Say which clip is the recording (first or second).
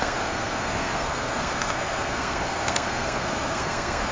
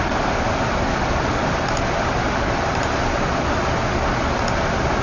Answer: second